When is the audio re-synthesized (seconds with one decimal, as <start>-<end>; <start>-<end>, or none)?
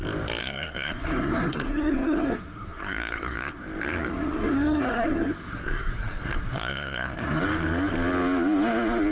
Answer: 0.4-3.6; 4.0-7.4